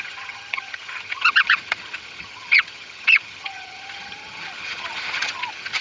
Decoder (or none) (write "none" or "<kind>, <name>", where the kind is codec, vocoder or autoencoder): vocoder, HiFi-GAN